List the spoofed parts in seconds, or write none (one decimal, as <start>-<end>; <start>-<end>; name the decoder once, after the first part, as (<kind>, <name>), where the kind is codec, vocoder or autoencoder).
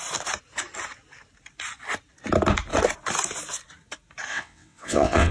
4.3-5.3 (vocoder, WaveNeXt)